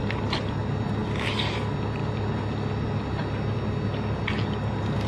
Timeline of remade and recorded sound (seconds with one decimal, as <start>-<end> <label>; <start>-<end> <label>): 0.0-5.1 recorded